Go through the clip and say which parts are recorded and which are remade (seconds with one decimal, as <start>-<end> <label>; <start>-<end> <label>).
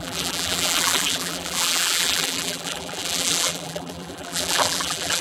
0.0-5.2 remade